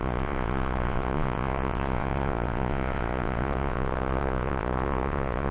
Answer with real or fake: fake